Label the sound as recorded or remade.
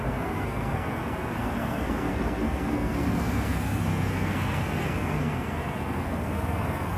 remade